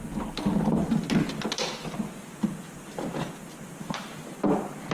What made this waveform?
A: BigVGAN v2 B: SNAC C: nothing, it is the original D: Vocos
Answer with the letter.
C